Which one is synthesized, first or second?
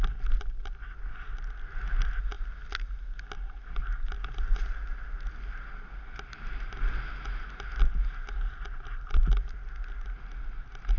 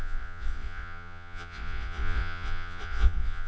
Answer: second